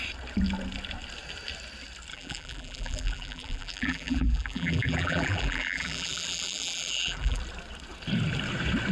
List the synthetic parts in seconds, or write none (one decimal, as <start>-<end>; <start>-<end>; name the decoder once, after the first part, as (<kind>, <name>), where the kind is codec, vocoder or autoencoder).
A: 2.1-7.4 (vocoder, BigVGAN v2)